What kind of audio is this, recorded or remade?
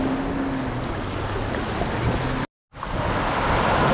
recorded